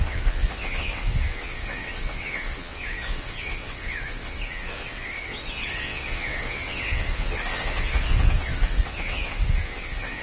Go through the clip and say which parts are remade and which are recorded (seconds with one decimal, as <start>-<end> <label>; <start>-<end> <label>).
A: 0.0-10.2 remade